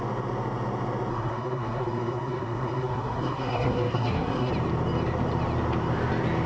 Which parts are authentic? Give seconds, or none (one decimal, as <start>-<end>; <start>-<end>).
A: 0.0-1.1; 4.5-6.5